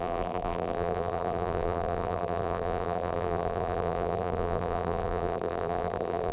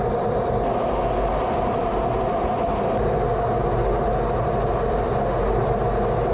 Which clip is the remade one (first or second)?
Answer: first